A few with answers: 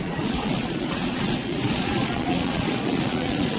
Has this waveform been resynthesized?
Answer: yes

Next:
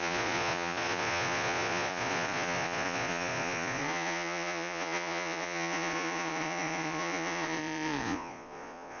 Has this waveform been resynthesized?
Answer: yes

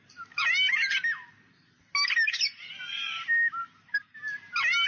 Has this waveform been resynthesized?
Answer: no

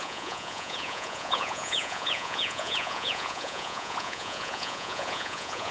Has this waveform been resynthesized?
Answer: yes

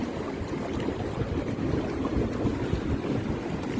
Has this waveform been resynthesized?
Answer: no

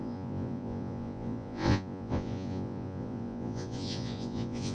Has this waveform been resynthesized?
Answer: yes